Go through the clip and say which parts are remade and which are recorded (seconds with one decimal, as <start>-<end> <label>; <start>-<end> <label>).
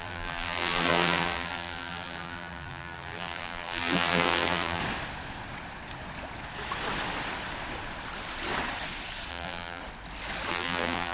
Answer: 0.0-4.8 remade; 4.8-9.3 recorded; 9.3-9.8 remade; 9.8-10.5 recorded; 10.5-11.1 remade